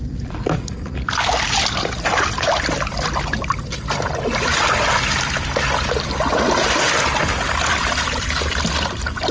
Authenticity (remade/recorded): remade